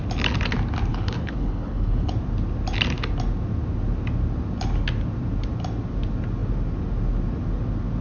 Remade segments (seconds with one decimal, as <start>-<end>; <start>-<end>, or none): 0.9-2.1